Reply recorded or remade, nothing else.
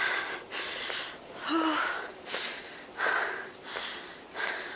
recorded